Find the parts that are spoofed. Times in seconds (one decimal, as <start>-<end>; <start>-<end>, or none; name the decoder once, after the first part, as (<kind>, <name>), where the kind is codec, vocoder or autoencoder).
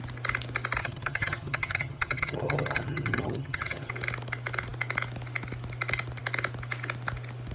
0.8-3.9 (vocoder, HiFi-GAN)